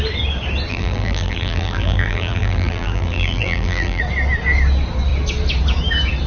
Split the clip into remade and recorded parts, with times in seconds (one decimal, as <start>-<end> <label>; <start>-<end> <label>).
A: 0.0-0.7 recorded; 0.7-4.0 remade; 4.0-6.3 recorded